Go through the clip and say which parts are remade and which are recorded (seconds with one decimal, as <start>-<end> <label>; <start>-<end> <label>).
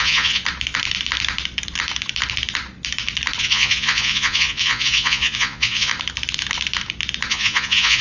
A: 0.0-0.4 remade; 0.4-3.4 recorded; 3.4-5.9 remade; 5.9-7.3 recorded; 7.3-8.0 remade